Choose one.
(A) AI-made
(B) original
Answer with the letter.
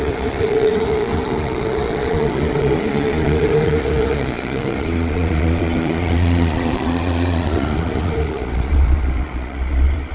A